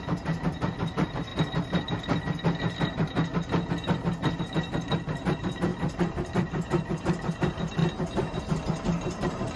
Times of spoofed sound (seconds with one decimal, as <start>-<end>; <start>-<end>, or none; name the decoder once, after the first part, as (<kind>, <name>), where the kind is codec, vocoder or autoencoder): 0.0-1.3 (vocoder, BigVGAN v2); 4.4-7.8; 8.4-9.6